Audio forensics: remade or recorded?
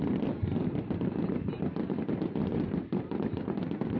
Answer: remade